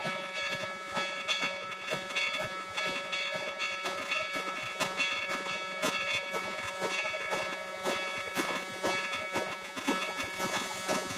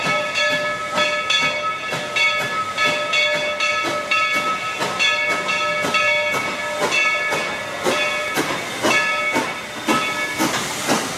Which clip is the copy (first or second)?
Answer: first